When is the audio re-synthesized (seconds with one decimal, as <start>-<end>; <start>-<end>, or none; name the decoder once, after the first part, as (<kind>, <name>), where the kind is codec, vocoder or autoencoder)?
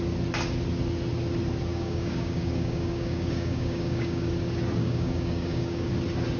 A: 1.7-4.3 (codec, DAC); 4.8-5.9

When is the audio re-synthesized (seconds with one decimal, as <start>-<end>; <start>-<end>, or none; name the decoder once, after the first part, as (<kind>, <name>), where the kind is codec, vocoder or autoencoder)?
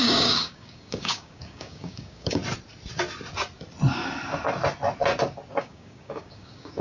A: 0.0-2.4 (codec, DAC); 5.6-6.8